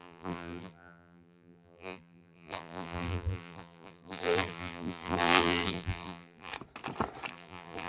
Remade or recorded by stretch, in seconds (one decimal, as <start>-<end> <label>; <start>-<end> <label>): 0.0-6.5 remade; 6.5-7.3 recorded; 7.3-7.9 remade